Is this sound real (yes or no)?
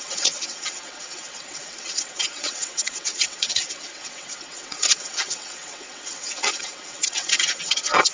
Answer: no